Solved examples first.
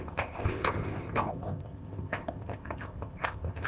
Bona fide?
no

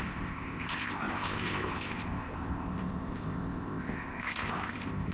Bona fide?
no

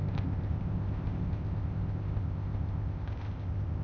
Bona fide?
no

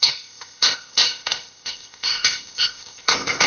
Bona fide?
no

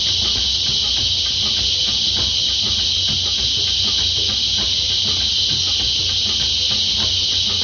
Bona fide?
yes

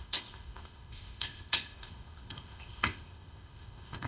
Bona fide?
no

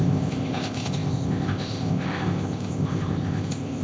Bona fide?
no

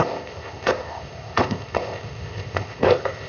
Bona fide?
no